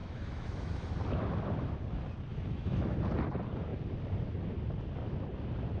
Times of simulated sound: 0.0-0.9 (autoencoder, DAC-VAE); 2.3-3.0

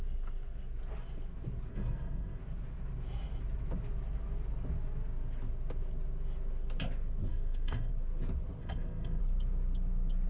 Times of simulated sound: 1.7-2.4 (codec, SNAC); 7.3-7.9; 8.6-9.2

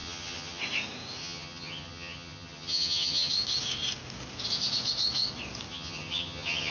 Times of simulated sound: 0.0-0.6 (vocoder, HiFi-GAN); 1.2-3.3; 5.7-6.7

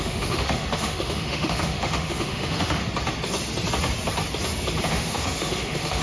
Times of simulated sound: 0.0-2.8 (autoencoder, DAC-VAE); 4.9-6.0

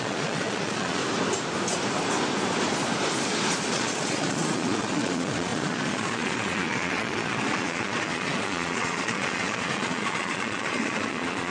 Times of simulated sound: 0.0-1.0 (vocoder, Vocos); 3.7-11.5

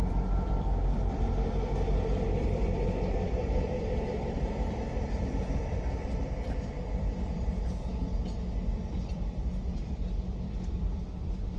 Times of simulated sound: 0.0-7.9 (vocoder, BigVGAN v2); 8.8-11.6

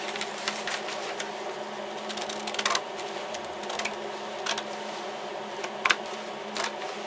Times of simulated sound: none